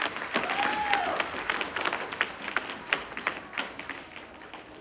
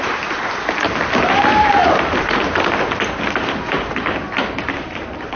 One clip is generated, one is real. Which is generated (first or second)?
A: second